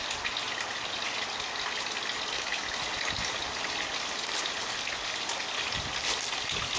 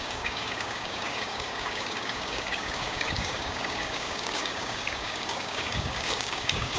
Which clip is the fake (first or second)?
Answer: second